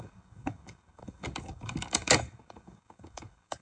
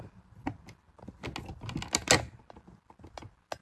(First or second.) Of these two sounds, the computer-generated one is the first